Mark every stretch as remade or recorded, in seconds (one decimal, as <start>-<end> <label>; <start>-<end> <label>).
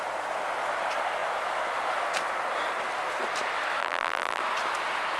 0.0-3.8 recorded; 3.8-4.4 remade; 4.4-5.2 recorded